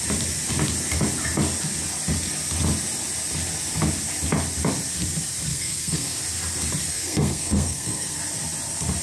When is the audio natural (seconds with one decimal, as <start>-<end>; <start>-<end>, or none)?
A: 0.0-5.5; 6.2-6.9; 8.2-9.0